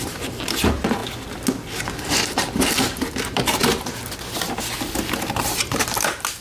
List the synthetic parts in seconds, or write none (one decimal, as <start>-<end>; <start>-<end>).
0.0-1.0; 2.1-3.6; 5.4-6.4